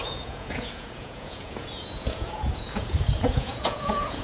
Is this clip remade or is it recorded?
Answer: remade